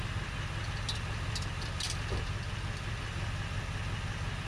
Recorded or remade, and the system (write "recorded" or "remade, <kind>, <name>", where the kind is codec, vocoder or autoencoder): recorded